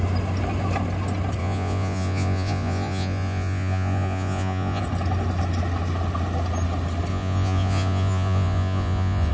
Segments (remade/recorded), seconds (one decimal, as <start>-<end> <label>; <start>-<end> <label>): 0.0-1.4 recorded; 1.4-4.8 remade; 4.8-7.1 recorded; 7.1-9.3 remade